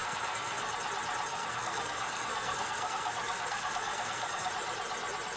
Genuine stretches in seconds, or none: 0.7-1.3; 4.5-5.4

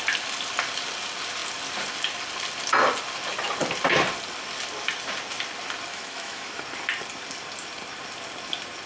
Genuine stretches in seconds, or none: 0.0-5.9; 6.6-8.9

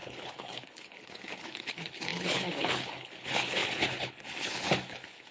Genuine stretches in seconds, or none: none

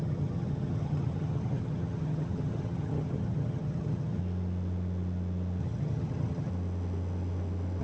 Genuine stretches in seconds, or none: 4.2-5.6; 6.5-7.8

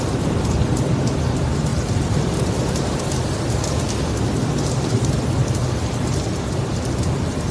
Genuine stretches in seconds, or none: 0.0-7.5